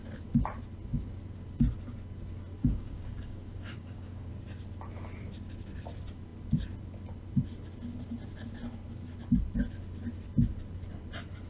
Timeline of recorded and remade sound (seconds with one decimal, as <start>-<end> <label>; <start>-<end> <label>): 0.0-2.6 recorded; 2.6-4.3 remade; 4.3-11.5 recorded